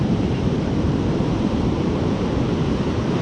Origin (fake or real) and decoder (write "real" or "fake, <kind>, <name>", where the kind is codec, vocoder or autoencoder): fake, vocoder, BigVGAN v2